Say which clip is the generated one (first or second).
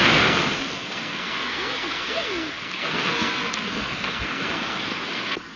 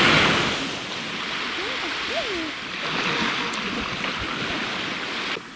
first